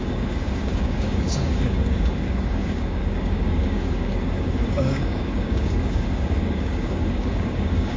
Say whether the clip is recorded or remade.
remade